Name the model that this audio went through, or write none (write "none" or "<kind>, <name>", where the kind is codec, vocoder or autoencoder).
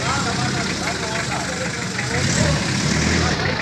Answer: none